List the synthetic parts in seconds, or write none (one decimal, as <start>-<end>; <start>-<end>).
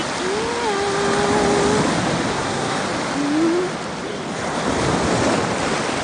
2.3-2.8